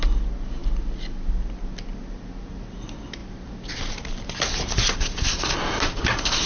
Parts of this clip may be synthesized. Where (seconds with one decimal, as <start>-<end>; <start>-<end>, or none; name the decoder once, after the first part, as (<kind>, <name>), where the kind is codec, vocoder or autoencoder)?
3.2-3.9 (vocoder, BigVGAN v2)